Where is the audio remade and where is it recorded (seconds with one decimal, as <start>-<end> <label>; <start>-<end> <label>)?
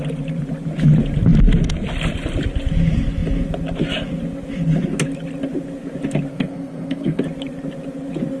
0.0-6.3 recorded; 6.3-7.2 remade; 7.2-8.4 recorded